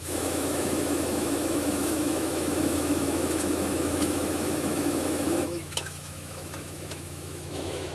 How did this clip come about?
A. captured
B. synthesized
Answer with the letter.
B